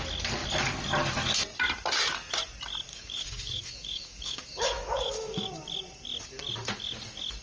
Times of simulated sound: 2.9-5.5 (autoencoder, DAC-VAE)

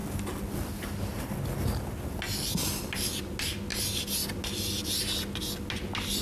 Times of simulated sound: none